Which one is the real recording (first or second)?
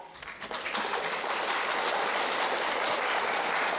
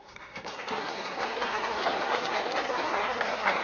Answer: first